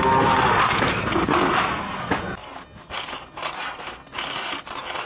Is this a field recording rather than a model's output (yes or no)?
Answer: yes